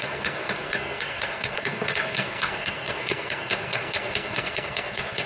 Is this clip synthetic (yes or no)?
yes